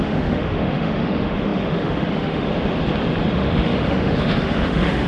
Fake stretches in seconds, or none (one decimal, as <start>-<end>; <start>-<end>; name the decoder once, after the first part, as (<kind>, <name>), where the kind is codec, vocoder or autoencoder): 0.0-2.5 (autoencoder, DAC-VAE); 3.3-5.1